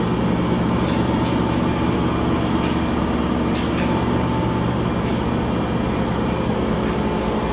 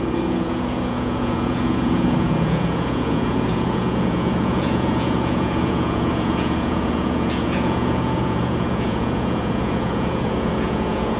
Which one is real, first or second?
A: first